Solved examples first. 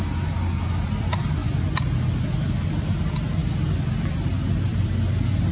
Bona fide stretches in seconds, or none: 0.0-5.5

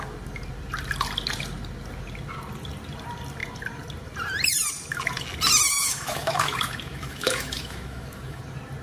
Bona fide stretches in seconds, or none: 0.0-5.7; 8.4-8.8